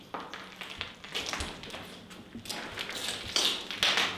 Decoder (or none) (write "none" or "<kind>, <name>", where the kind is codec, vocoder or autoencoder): none